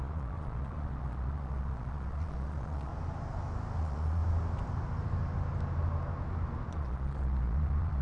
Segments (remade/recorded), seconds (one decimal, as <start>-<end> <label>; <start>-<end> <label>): 0.0-2.9 remade; 2.9-3.8 recorded; 3.8-4.2 remade; 4.2-6.7 recorded; 6.7-8.0 remade